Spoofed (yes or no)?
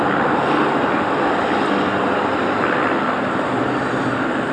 no